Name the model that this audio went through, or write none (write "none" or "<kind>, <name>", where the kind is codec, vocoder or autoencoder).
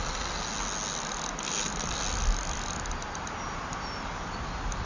none